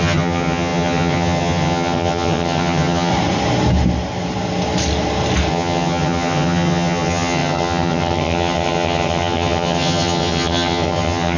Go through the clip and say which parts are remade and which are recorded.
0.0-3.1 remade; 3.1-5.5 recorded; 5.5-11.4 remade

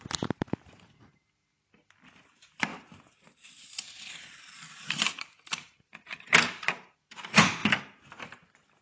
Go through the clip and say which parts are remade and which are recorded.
0.0-2.7 recorded; 2.7-7.1 remade; 7.1-8.8 recorded

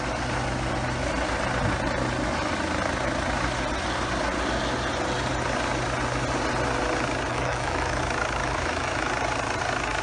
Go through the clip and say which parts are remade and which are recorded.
0.0-7.3 recorded; 7.3-8.0 remade; 8.0-8.4 recorded; 8.4-9.1 remade; 9.1-10.0 recorded

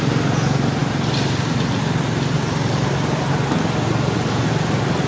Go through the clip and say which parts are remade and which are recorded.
0.0-5.1 recorded